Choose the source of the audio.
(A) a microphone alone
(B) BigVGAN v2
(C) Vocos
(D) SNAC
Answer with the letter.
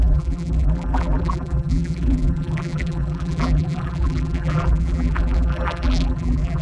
B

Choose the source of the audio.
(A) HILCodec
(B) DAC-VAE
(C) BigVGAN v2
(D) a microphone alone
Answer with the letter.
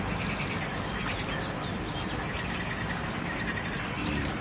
D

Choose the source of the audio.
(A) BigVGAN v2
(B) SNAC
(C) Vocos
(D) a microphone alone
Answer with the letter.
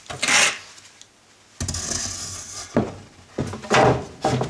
D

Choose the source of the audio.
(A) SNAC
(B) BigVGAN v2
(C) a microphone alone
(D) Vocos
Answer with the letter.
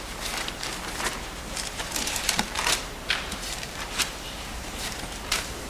B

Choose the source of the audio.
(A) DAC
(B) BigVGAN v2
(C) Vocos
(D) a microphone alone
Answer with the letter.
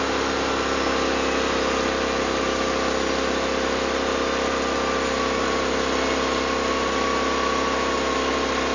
D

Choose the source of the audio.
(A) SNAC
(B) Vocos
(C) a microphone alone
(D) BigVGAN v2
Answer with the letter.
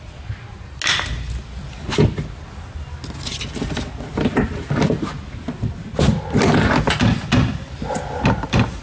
C